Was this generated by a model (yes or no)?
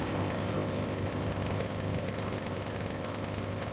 yes